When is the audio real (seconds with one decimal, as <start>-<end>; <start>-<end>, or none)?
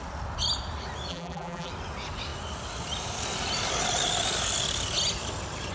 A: 0.0-1.1; 1.7-5.7